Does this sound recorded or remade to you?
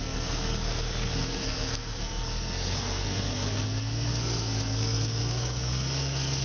remade